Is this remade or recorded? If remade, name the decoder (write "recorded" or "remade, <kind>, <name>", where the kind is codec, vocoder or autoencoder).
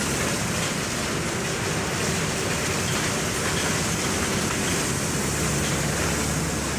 recorded